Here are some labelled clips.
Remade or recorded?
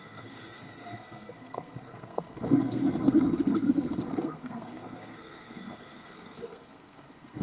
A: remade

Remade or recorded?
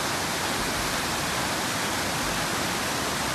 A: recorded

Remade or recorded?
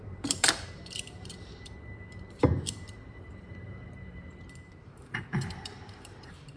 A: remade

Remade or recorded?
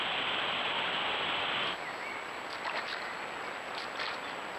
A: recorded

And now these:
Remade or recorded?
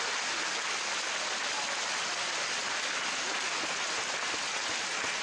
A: recorded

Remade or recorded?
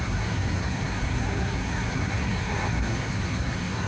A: remade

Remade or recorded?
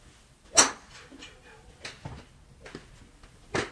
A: recorded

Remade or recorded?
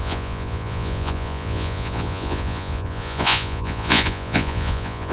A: remade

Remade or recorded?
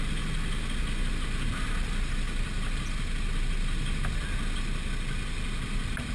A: recorded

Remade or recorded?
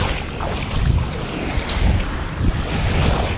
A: recorded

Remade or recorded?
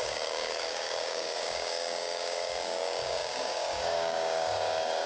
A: remade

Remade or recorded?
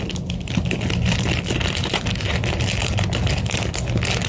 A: recorded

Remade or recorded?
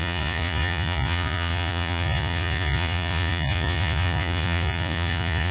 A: remade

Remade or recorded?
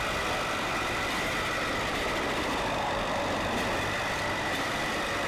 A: remade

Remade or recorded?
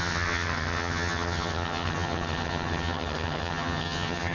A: remade